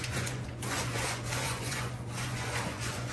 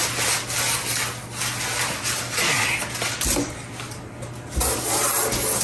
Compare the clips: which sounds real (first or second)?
second